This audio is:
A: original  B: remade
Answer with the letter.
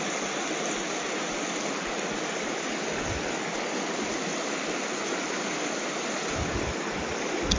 A